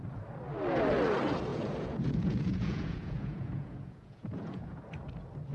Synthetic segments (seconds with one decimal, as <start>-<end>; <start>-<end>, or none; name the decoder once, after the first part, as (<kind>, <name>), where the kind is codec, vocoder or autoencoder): 1.5-4.8 (vocoder, Vocos)